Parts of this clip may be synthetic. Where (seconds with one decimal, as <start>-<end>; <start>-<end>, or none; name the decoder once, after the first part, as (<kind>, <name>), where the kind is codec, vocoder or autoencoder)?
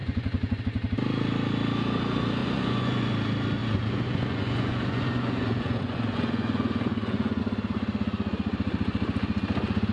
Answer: 0.0-0.6 (vocoder, Vocos); 2.4-3.1; 3.6-7.4